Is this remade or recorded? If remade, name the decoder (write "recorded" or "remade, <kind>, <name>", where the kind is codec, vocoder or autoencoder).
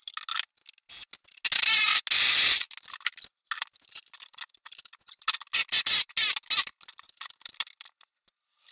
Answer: recorded